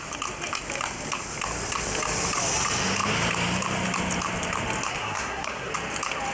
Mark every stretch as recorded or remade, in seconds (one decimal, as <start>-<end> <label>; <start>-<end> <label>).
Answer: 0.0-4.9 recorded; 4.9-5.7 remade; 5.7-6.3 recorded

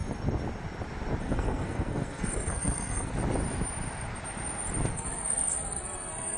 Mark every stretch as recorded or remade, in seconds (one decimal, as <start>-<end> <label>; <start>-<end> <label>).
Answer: 0.0-1.2 recorded; 1.2-3.1 remade; 3.1-4.9 recorded; 4.9-6.4 remade

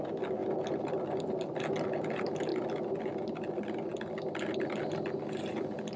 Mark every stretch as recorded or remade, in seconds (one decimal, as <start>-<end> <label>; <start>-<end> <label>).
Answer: 0.0-6.0 recorded